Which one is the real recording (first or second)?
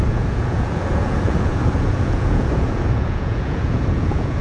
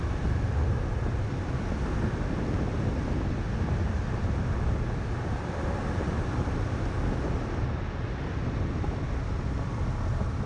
second